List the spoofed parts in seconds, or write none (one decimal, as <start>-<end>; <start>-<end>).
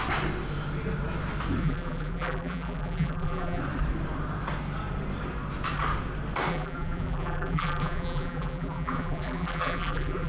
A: 1.6-3.6; 6.5-10.3